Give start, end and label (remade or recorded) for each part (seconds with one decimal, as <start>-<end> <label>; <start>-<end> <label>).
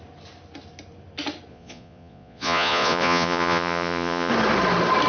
0.0-1.5 recorded; 1.5-4.3 remade; 4.3-5.1 recorded